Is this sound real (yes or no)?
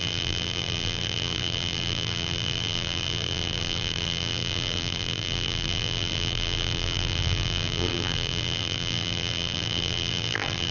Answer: no